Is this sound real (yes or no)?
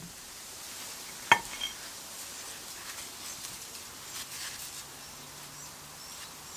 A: yes